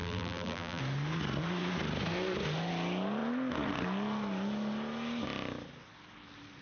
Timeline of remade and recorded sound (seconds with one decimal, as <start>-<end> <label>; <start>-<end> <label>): 0.0-0.8 remade; 0.8-6.6 recorded